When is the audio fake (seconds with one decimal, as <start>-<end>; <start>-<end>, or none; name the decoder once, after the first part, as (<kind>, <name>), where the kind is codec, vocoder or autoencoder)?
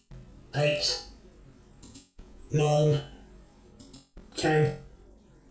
1.9-3.0 (vocoder, Vocos)